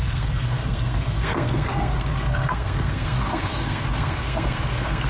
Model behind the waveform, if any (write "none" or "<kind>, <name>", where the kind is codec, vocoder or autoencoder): codec, SNAC